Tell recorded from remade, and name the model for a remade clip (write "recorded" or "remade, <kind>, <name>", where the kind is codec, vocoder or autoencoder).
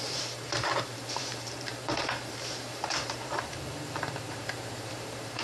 remade, vocoder, BigVGAN v2